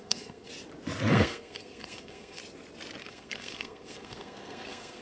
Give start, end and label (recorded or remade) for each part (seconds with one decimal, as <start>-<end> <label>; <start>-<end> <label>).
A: 0.0-0.5 remade; 0.5-1.1 recorded; 1.1-2.4 remade; 2.4-3.0 recorded; 3.0-5.0 remade